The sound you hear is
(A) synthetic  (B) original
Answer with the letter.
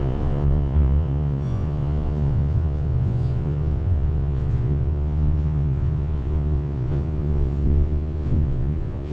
A